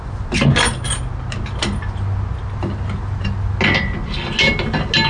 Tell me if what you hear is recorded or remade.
recorded